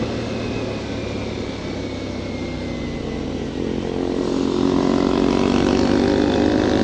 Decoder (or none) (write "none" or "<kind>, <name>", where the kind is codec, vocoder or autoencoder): none